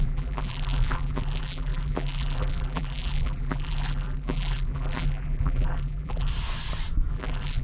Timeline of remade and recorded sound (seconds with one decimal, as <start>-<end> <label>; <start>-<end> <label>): 0.0-6.3 remade; 6.3-7.1 recorded; 7.1-7.6 remade

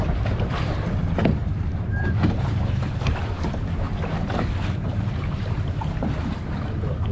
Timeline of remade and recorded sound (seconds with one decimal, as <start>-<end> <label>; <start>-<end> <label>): 0.0-1.4 recorded; 1.4-3.5 remade; 3.5-3.9 recorded; 3.9-6.1 remade; 6.1-7.1 recorded